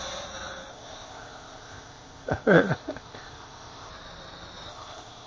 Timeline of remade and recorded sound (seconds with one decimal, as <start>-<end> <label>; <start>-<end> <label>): 0.0-0.7 recorded; 0.7-3.9 remade; 3.9-4.7 recorded; 4.7-5.3 remade

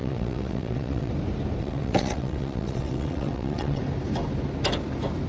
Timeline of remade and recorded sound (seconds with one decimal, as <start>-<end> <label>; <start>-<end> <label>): 0.0-1.1 remade; 1.1-1.6 recorded; 1.6-3.8 remade; 3.8-5.3 recorded

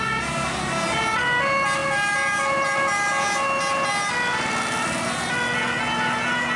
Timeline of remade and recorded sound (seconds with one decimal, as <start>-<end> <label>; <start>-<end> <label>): 0.0-6.6 recorded

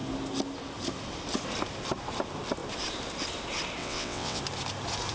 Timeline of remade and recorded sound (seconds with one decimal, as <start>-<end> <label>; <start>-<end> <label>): 0.0-3.8 recorded; 3.8-4.4 remade; 4.4-5.1 recorded

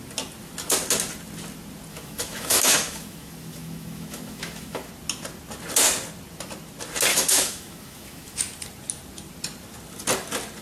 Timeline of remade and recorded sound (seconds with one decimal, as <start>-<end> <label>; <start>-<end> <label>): 0.0-1.9 recorded; 1.9-4.9 remade; 4.9-7.1 recorded; 7.1-8.4 remade; 8.4-10.6 recorded